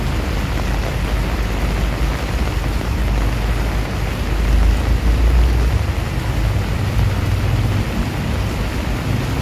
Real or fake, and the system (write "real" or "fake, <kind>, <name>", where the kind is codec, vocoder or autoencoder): real